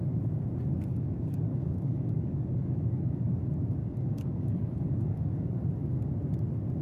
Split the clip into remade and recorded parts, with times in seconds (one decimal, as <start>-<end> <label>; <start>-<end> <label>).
0.0-0.9 recorded; 0.9-3.4 remade; 3.4-3.8 recorded; 3.8-5.6 remade; 5.6-6.8 recorded